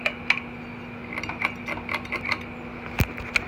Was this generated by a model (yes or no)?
no